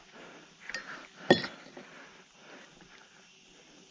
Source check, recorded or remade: recorded